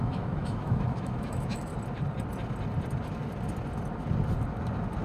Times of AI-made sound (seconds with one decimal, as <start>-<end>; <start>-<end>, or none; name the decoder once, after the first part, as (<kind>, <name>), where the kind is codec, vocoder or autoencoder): 0.0-1.7 (autoencoder, DAC-VAE)

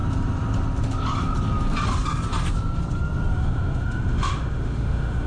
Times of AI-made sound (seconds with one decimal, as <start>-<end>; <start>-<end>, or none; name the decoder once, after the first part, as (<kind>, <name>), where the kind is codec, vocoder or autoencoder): 3.3-5.3 (autoencoder, DAC-VAE)

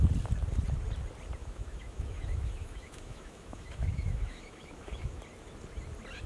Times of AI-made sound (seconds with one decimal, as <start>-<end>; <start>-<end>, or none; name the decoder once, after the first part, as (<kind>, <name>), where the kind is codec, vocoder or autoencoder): 1.4-5.2 (autoencoder, DAC-VAE)

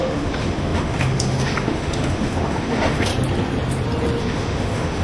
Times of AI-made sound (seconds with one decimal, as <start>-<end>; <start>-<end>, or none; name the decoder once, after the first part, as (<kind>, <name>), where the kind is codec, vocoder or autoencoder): 0.0-3.1 (autoencoder, DAC-VAE); 4.2-5.0

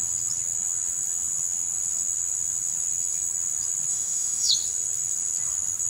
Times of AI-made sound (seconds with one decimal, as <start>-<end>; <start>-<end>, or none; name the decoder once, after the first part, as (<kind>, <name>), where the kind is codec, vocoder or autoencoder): 3.9-4.5 (autoencoder, DAC-VAE)

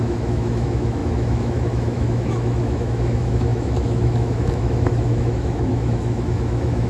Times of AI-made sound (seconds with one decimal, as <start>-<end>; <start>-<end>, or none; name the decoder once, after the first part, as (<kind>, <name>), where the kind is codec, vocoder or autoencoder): 0.0-6.9 (autoencoder, DAC-VAE)